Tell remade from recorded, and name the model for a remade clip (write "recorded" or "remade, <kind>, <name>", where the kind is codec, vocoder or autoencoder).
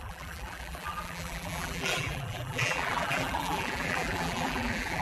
remade, vocoder, BigVGAN v2